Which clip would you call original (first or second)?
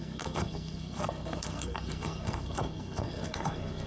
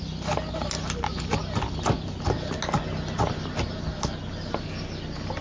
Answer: second